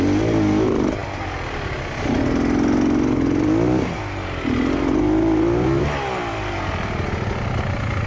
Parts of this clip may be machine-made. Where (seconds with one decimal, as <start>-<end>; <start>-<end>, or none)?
none